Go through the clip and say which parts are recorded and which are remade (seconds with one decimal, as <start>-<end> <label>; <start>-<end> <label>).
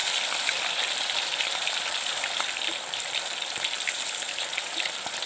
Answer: 0.0-0.7 recorded; 0.7-5.3 remade